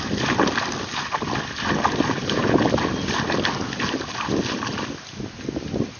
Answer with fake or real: real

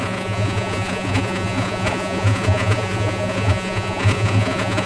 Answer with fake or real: fake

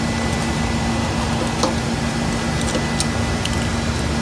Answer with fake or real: real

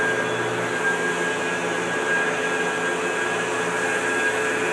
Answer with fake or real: real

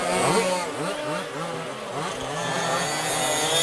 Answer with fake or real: real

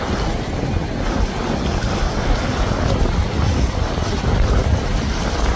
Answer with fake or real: real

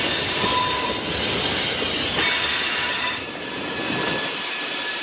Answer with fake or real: real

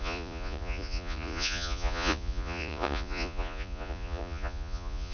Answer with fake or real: fake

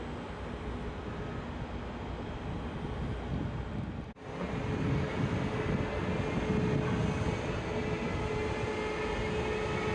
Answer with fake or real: real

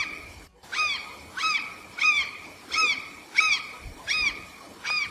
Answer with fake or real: fake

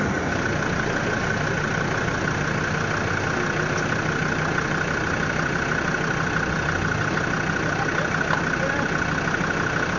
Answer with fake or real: real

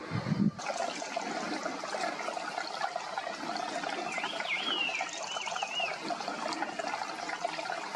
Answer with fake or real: real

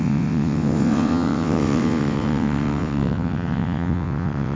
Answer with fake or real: fake